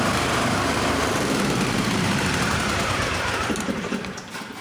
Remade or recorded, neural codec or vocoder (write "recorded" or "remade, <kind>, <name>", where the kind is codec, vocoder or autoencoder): remade, vocoder, BigVGAN v2